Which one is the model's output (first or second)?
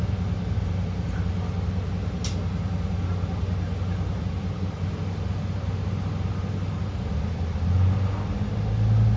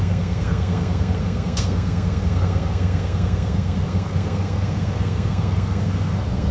second